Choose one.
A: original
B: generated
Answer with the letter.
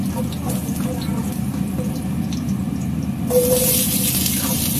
A